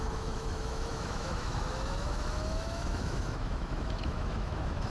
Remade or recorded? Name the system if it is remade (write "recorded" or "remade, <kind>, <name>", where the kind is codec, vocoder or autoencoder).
remade, autoencoder, DAC-VAE